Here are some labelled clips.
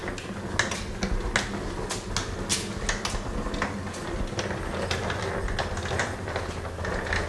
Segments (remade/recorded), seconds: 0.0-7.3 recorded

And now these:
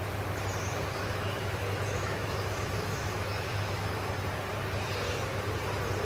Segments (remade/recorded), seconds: 0.0-0.5 recorded; 0.5-4.1 remade; 4.1-6.0 recorded

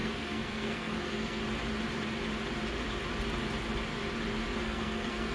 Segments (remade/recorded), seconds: 0.0-1.4 remade; 1.4-4.6 recorded; 4.6-5.3 remade

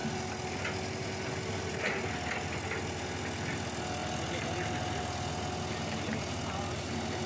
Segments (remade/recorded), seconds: 0.0-7.3 recorded

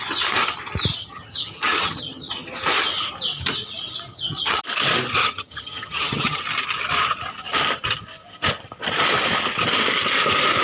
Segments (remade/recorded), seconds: 0.0-1.0 recorded; 1.0-2.3 remade; 2.3-4.1 recorded; 4.1-4.6 remade; 4.6-5.2 recorded; 5.2-6.4 remade; 6.4-10.6 recorded

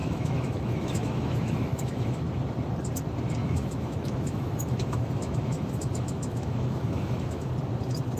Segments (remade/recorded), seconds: 0.0-2.2 remade; 2.2-3.4 recorded; 3.4-7.5 remade; 7.5-8.2 recorded